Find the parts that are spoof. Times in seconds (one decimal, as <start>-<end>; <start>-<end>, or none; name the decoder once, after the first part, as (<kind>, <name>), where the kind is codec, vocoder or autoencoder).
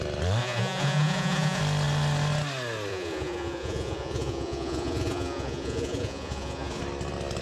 0.4-1.6 (vocoder, Vocos); 2.9-6.8